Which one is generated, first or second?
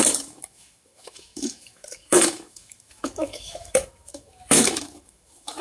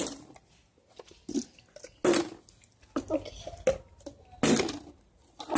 first